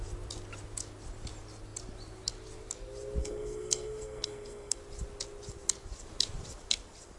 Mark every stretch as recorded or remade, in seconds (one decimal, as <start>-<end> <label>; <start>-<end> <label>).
0.0-3.2 recorded; 3.2-4.8 remade; 4.8-7.2 recorded